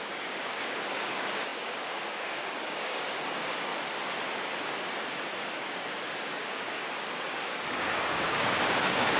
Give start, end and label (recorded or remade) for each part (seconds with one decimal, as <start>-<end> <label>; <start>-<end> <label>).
0.0-3.7 remade; 3.7-5.4 recorded; 5.4-9.2 remade